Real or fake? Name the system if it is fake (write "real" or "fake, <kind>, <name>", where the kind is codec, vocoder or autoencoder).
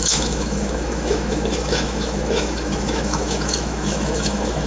fake, autoencoder, DAC-VAE